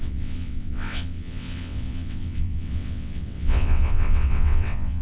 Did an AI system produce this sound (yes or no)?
yes